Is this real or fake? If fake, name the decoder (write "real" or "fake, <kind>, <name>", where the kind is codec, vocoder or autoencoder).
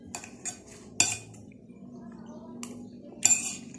real